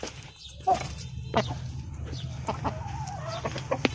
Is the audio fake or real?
real